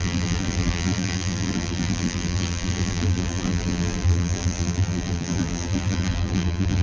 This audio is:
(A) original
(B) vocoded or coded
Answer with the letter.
B